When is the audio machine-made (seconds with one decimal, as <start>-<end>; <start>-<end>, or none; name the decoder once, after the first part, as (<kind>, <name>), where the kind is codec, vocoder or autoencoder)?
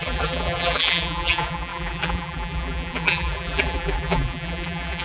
0.0-5.0 (vocoder, BigVGAN v2)